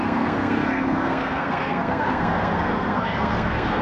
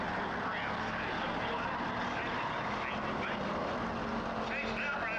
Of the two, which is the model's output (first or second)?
first